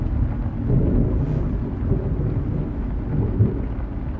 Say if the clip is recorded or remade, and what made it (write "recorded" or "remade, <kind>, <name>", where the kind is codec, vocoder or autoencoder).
recorded